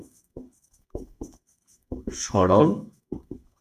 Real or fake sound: fake